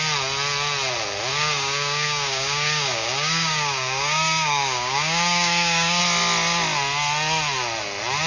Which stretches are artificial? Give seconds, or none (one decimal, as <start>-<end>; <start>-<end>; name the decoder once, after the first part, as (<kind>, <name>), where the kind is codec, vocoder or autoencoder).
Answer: 1.3-6.0 (codec, DAC)